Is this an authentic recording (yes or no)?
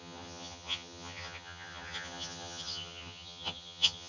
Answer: no